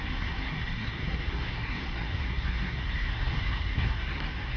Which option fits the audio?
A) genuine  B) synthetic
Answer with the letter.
B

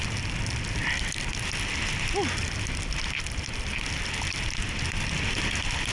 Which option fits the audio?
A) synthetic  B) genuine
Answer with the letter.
B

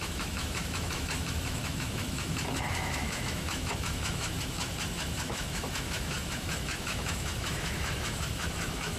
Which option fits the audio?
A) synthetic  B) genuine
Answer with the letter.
A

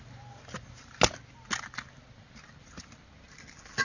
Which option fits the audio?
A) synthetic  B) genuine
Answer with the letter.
B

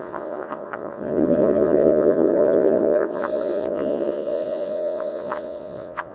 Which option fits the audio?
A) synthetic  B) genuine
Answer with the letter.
A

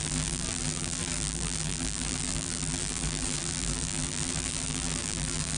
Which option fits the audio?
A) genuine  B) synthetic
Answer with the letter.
B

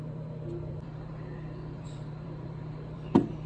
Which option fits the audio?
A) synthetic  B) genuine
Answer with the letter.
A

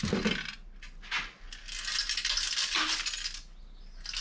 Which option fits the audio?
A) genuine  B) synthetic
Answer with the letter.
A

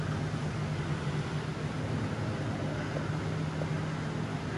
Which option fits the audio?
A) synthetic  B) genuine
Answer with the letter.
B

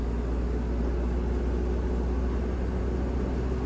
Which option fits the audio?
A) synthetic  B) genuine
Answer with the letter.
B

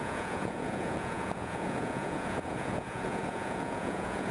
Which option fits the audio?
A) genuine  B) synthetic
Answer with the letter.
B